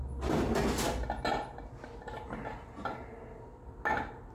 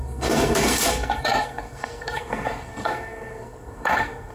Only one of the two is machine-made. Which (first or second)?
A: second